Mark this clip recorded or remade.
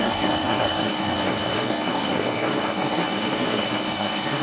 remade